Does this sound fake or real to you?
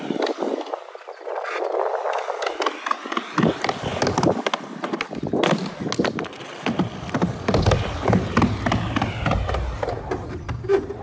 real